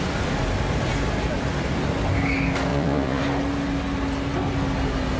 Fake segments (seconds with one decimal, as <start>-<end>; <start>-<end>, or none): 2.7-3.2